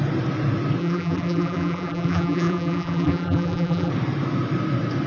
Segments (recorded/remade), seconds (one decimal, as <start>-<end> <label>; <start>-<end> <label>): 0.0-0.8 recorded; 0.8-3.9 remade; 3.9-5.1 recorded